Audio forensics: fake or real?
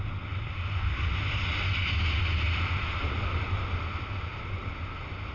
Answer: real